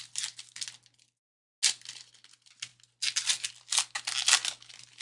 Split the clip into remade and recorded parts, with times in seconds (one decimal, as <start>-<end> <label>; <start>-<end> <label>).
0.0-5.0 recorded